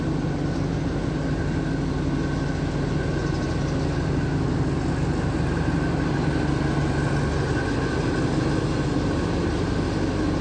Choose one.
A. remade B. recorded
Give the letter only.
B